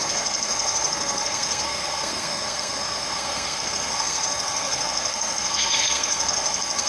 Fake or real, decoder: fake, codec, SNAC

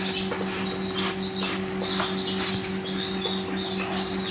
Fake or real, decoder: real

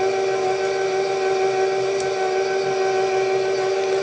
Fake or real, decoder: real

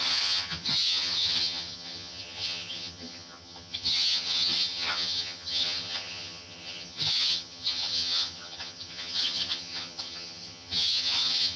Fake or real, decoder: fake, vocoder, HiFi-GAN